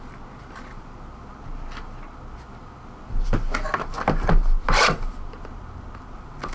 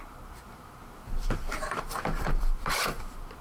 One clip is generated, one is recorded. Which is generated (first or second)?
second